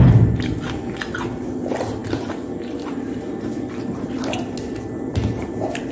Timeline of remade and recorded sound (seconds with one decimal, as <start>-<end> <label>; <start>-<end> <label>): 0.0-5.9 recorded